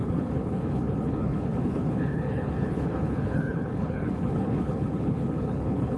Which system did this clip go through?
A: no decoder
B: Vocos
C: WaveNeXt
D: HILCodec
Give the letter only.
D